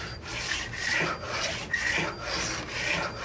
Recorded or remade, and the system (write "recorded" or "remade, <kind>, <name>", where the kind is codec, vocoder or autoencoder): recorded